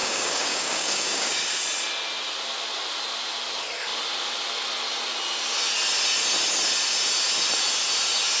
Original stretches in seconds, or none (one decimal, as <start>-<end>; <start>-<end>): 1.6-8.4

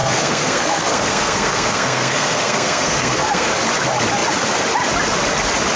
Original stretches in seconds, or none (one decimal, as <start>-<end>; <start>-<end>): 3.5-5.8

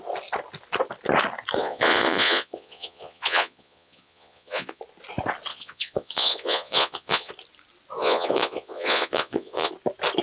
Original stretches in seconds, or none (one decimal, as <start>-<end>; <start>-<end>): 0.0-1.6; 4.8-5.5; 7.3-8.0; 9.7-10.2

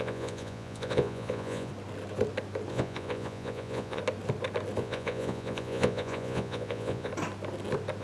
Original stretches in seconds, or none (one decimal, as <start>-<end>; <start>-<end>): 1.7-2.7; 4.0-4.8; 7.1-8.0